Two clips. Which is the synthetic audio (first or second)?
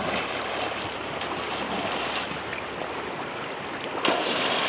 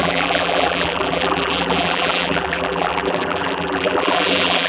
second